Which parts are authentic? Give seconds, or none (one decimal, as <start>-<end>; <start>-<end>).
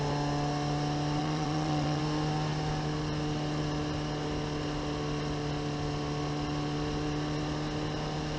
0.0-1.2; 2.0-8.4